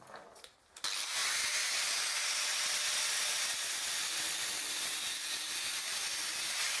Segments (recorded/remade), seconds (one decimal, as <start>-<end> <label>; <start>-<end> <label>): 0.0-6.8 recorded